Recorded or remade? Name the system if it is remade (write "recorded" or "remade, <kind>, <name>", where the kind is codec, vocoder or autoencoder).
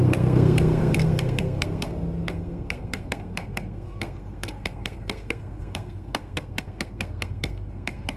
remade, codec, SNAC